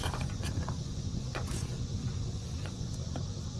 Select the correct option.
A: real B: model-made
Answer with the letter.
B